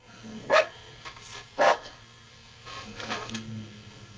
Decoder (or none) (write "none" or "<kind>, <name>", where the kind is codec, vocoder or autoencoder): codec, SNAC